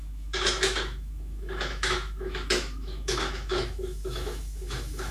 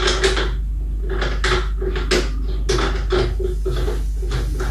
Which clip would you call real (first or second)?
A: second